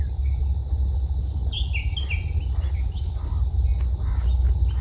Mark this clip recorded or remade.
recorded